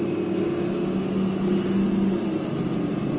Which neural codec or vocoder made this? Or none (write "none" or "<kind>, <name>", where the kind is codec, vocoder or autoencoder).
none